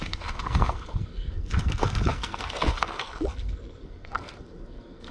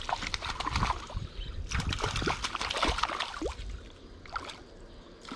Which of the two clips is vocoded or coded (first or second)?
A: first